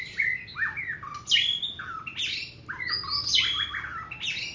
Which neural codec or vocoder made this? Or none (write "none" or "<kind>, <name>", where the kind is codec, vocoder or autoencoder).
none